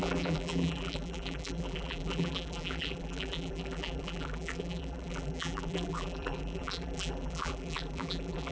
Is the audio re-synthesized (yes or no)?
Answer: yes